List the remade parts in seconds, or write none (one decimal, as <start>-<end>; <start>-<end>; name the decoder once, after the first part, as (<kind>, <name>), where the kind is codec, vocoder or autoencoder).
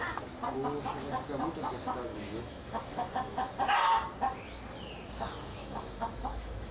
2.1-3.1 (autoencoder, DAC-VAE); 5.5-6.7